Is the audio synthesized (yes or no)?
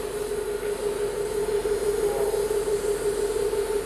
no